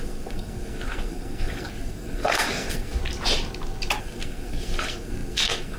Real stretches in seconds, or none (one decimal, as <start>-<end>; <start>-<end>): 3.0-4.0